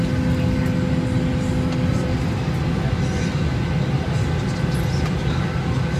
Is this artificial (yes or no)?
no